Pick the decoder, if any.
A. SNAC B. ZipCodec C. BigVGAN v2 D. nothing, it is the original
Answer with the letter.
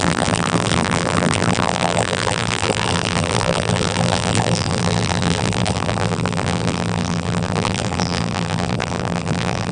C